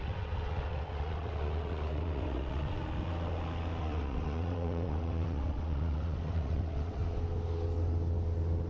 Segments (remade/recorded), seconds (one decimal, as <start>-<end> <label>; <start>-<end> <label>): 0.0-2.8 remade; 2.8-3.8 recorded; 3.8-7.0 remade; 7.0-8.7 recorded